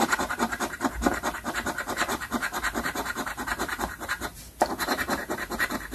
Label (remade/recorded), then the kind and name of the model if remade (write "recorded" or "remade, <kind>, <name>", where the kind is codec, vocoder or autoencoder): remade, vocoder, BigVGAN v2